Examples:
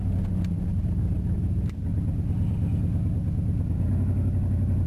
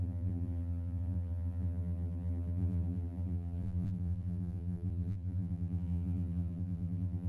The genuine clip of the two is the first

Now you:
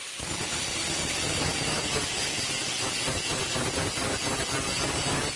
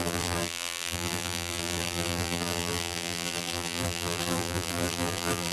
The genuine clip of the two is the first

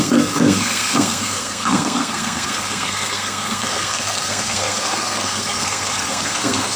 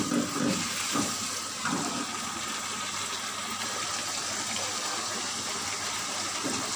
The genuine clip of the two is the second